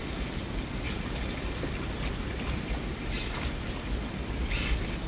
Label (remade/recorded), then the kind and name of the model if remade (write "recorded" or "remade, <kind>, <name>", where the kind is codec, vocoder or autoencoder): recorded